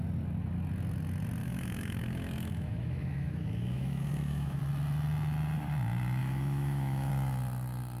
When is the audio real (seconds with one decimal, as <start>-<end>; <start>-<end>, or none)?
0.0-1.4; 4.6-6.2; 7.1-8.0